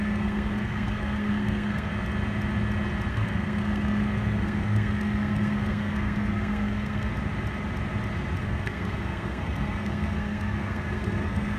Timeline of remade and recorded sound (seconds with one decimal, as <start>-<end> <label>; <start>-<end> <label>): 0.0-1.9 remade; 1.9-3.1 recorded; 3.1-7.1 remade; 7.1-8.4 recorded; 8.4-11.6 remade